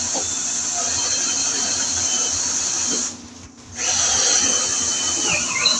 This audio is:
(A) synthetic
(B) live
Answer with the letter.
B